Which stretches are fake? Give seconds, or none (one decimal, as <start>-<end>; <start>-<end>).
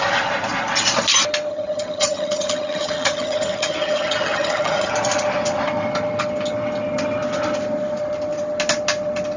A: 1.5-4.9